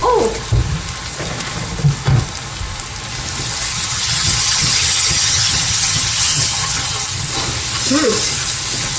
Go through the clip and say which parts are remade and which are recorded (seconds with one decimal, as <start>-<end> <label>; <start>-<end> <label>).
0.0-3.7 recorded; 3.7-7.3 remade; 7.3-9.0 recorded